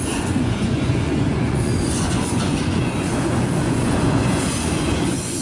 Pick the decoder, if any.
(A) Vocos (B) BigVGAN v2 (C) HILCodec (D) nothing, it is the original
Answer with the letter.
A